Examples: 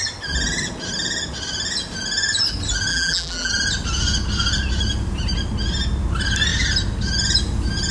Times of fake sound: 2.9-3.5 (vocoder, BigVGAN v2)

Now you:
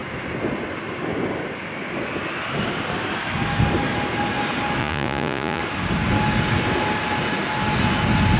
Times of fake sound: 4.8-5.6 (vocoder, Vocos)

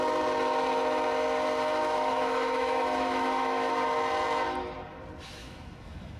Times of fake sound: 1.8-3.7 (autoencoder, DAC-VAE); 5.4-6.2

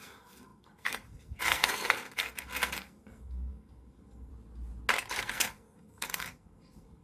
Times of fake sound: 0.0-4.3 (codec, SNAC); 5.2-7.0

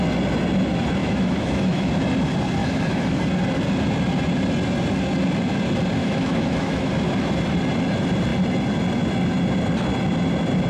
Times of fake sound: 1.0-1.9 (autoencoder, DAC-VAE); 2.6-3.2; 6.0-6.9